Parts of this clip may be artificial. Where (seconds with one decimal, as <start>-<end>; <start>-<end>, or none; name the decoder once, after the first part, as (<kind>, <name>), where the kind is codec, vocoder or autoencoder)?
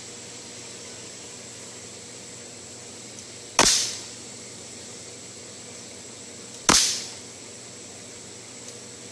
3.6-5.1 (vocoder, BigVGAN v2)